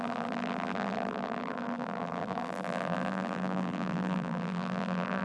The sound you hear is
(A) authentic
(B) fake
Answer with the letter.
B